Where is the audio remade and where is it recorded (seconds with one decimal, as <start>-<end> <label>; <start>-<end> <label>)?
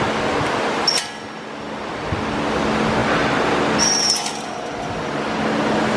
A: 0.0-6.0 recorded